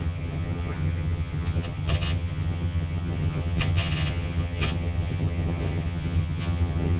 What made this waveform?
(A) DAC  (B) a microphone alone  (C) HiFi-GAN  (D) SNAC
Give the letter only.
C